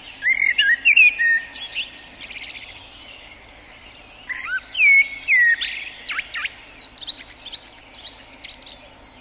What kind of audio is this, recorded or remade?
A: recorded